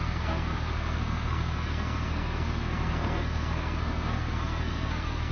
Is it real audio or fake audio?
fake